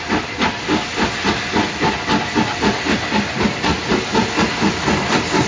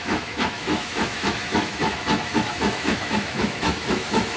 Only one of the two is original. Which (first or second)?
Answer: first